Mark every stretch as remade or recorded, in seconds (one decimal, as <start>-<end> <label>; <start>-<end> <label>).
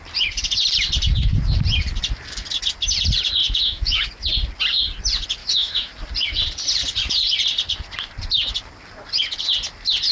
0.0-3.4 recorded; 3.4-4.1 remade; 4.1-5.4 recorded; 5.4-5.9 remade; 5.9-10.1 recorded